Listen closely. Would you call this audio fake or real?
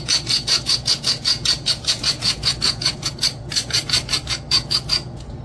fake